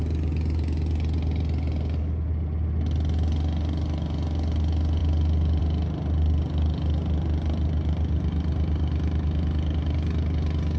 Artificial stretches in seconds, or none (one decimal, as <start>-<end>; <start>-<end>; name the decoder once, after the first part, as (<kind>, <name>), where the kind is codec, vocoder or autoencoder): none